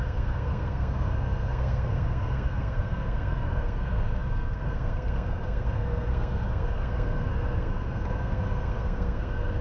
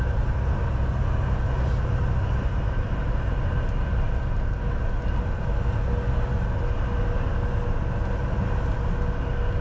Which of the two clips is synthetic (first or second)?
first